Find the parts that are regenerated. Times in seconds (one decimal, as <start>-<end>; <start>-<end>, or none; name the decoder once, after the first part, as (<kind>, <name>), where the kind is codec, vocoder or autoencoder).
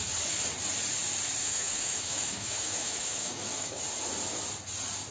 1.4-3.8 (autoencoder, DAC-VAE)